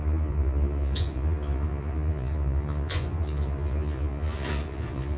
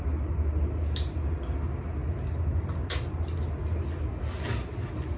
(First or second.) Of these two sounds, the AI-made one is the first